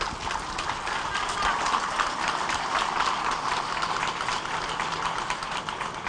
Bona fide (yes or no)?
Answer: yes